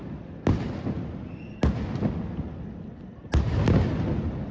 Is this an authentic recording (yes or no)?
yes